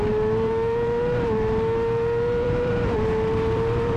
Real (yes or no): no